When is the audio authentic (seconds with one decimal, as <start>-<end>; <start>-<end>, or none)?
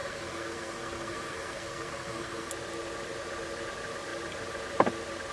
2.5-5.3